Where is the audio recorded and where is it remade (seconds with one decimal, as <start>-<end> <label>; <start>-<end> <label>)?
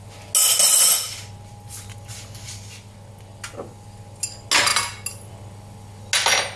0.0-6.6 recorded